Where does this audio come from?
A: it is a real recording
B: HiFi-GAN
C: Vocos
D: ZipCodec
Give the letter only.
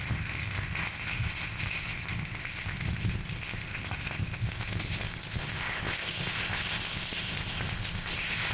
D